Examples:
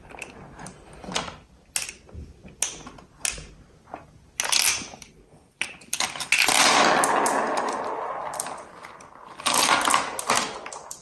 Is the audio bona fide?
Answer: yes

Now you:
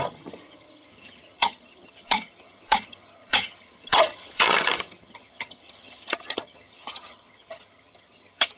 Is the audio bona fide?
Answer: no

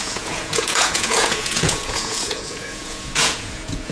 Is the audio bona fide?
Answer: no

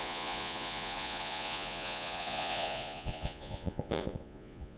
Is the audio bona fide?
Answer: no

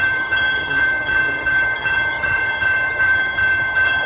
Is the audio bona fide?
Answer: no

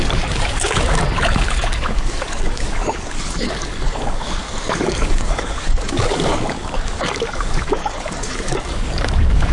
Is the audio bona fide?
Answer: no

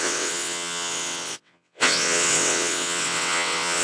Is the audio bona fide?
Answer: no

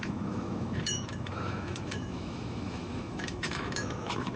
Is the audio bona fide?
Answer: no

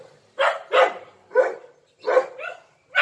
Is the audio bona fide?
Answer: yes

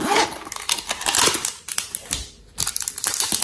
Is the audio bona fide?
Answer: yes